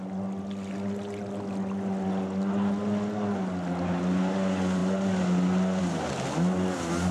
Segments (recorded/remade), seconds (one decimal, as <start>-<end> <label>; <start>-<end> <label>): 0.0-7.1 recorded

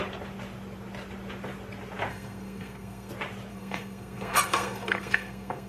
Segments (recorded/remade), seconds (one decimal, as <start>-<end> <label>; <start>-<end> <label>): 0.0-2.1 recorded; 2.1-3.1 remade; 3.1-3.5 recorded; 3.5-5.7 remade